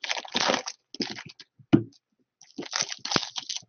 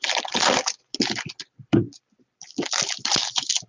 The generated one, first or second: second